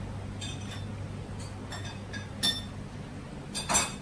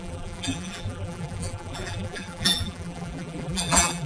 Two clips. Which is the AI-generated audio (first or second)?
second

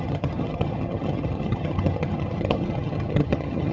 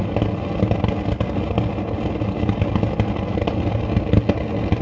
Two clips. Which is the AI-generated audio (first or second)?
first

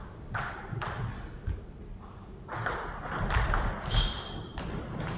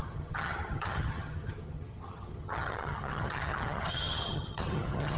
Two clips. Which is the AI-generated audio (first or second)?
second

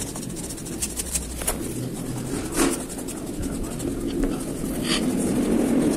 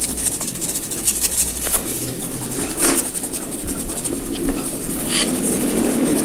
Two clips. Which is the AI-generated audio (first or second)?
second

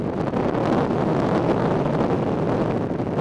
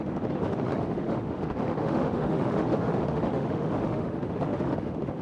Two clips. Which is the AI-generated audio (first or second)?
second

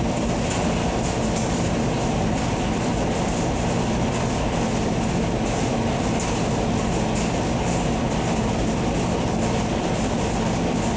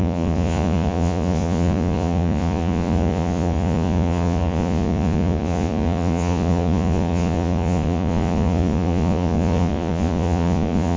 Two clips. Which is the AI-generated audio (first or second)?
second